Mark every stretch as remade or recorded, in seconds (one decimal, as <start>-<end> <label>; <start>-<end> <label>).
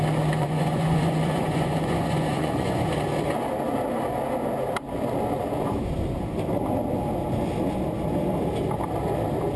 0.0-0.4 recorded; 0.4-2.9 remade; 2.9-9.6 recorded